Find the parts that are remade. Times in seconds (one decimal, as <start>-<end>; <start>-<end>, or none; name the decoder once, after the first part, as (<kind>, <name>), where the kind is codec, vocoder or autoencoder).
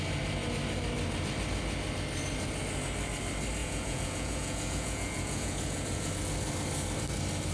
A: 3.6-6.1 (vocoder, Vocos)